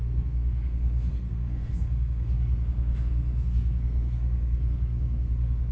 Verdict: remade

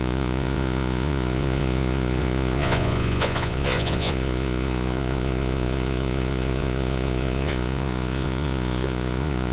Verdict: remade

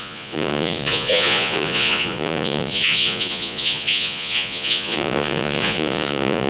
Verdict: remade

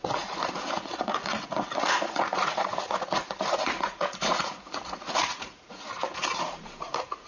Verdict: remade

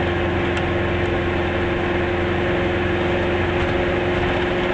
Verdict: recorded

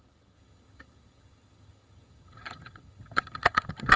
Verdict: remade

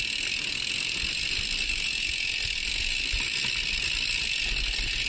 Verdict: recorded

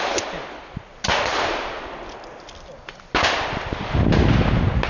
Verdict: recorded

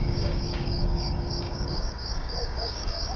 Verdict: remade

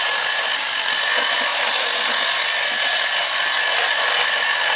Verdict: recorded